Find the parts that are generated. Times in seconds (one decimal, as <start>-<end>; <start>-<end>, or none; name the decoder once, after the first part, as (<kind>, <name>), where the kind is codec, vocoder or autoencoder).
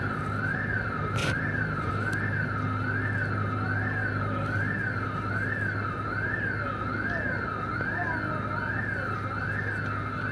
1.2-1.9 (vocoder, BigVGAN v2)